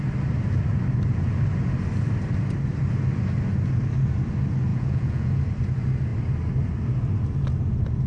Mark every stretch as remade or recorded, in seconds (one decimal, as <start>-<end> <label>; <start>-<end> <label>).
0.0-4.7 recorded; 4.7-5.4 remade; 5.4-8.1 recorded